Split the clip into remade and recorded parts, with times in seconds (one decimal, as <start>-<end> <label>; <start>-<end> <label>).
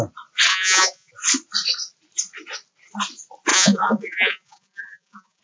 0.0-0.5 recorded; 0.5-1.1 remade; 1.1-3.5 recorded; 3.5-5.4 remade